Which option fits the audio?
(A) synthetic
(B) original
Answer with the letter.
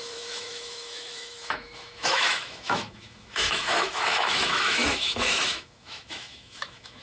A